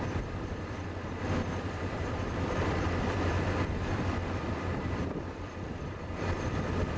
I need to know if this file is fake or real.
fake